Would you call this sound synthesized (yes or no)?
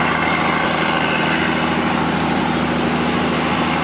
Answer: no